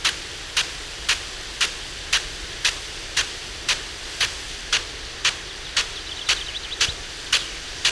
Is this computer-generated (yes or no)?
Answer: no